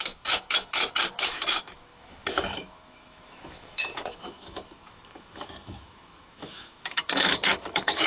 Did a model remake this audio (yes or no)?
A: yes